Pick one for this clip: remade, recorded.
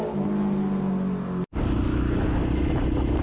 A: recorded